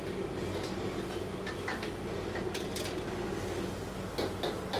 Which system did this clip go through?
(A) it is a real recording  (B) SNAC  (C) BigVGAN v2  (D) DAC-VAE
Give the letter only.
A